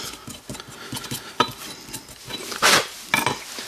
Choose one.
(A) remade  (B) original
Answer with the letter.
B